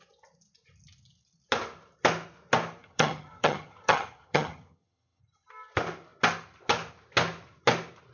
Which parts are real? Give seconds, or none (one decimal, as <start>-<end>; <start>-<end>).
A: 0.0-2.8; 5.2-8.1